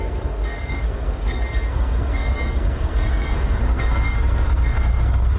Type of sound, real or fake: fake